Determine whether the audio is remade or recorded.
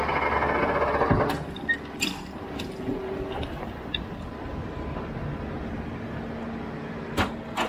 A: recorded